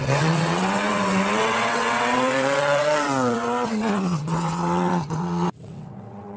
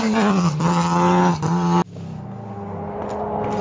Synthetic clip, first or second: first